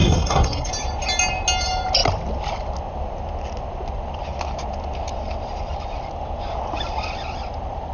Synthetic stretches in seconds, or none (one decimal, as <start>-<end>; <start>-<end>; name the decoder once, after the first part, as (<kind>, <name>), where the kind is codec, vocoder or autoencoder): 0.0-0.7 (codec, SNAC)